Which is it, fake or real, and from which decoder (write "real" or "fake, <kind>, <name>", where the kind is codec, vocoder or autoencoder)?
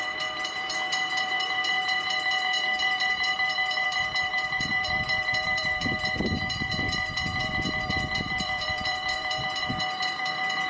fake, vocoder, BigVGAN v2